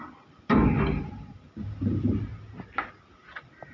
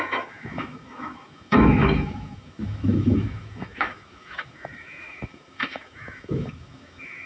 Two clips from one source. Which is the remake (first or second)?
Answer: second